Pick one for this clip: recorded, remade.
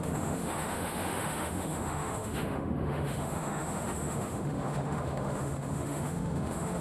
remade